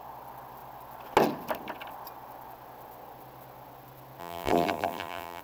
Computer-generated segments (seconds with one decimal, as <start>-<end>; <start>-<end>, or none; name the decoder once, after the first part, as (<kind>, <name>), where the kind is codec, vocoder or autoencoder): 4.2-5.4 (vocoder, BigVGAN v2)